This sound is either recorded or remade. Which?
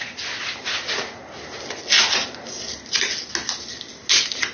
recorded